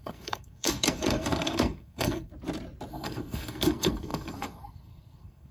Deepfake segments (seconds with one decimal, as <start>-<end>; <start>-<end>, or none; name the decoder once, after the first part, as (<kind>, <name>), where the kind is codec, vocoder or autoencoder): 0.0-2.3 (codec, SNAC); 2.9-5.5